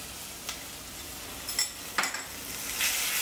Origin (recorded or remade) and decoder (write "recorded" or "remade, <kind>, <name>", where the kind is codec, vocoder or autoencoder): recorded